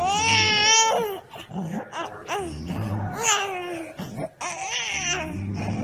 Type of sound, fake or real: real